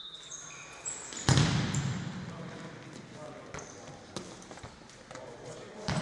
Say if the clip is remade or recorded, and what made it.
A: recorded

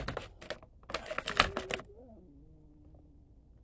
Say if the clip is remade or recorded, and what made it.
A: recorded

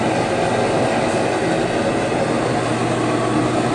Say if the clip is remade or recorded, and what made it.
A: recorded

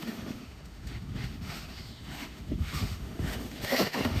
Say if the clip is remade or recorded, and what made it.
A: remade, autoencoder, DAC-VAE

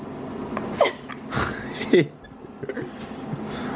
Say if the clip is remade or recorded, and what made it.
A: recorded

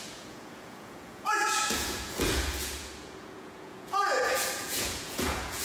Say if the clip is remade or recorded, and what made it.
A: remade, vocoder, Vocos